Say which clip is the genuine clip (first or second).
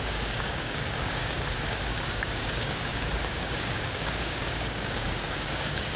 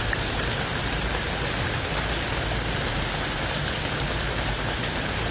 second